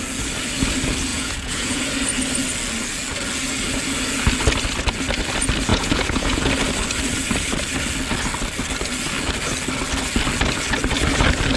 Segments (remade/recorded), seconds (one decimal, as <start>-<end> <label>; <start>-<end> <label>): 0.0-1.1 recorded; 1.1-1.8 remade; 1.8-5.7 recorded; 5.7-6.5 remade; 6.5-11.6 recorded